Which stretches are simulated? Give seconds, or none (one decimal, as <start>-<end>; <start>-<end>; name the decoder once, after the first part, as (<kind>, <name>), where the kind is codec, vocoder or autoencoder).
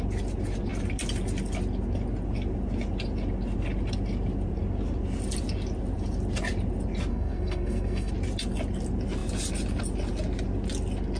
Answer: 7.1-8.1 (codec, SNAC)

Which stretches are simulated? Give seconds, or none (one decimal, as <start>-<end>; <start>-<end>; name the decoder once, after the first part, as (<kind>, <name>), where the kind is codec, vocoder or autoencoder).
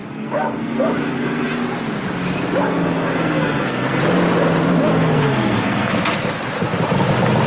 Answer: 0.0-1.5 (codec, SNAC); 2.6-4.0; 4.9-5.9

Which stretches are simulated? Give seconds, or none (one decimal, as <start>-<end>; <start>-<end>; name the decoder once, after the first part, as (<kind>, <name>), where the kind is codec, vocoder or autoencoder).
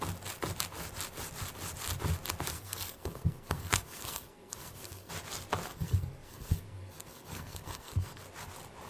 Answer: 2.5-5.1 (codec, SNAC); 5.7-8.2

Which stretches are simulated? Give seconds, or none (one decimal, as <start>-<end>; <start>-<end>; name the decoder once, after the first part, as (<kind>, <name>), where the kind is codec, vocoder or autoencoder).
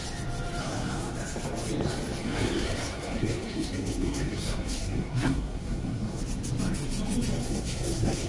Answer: 0.6-1.1 (codec, SNAC); 2.2-6.2; 7.4-8.3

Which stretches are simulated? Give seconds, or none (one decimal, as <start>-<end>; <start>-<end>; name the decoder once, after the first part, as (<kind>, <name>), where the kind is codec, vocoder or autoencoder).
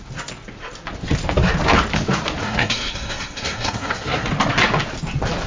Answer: 2.4-4.3 (codec, SNAC)